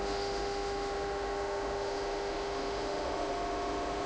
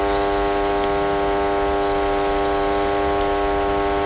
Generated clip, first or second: first